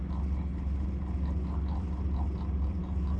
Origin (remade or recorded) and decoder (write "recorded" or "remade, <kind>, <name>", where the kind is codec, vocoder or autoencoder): recorded